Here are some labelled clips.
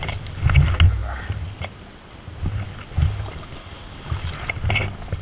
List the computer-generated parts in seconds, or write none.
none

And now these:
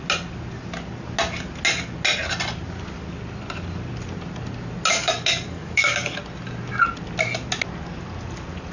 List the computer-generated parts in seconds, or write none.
4.9-6.2 (codec, DAC)

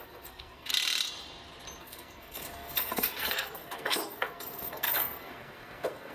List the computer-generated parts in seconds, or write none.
0.0-0.7 (codec, SNAC); 1.8-6.1

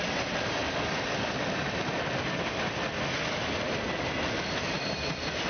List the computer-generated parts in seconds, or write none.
none

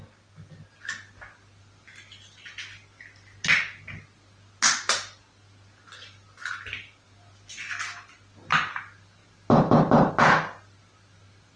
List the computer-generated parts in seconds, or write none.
none